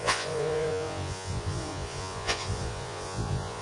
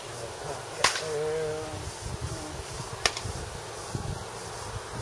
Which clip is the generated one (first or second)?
first